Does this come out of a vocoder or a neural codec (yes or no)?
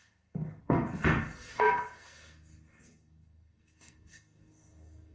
yes